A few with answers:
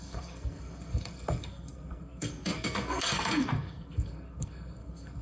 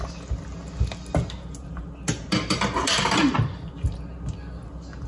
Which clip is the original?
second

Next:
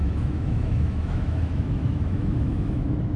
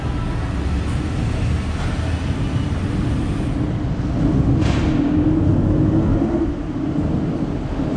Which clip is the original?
second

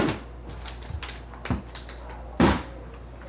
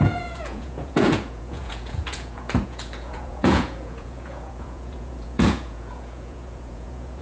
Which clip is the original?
first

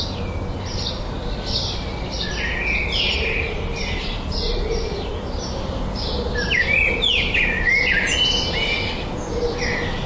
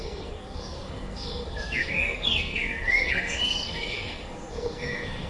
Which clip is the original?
first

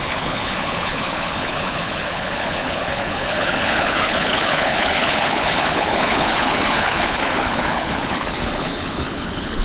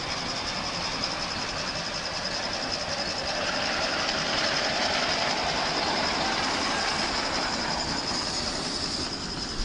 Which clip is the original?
second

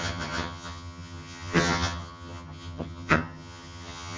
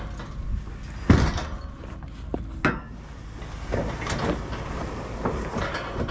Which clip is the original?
second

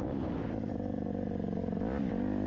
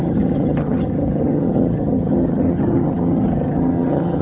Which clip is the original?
first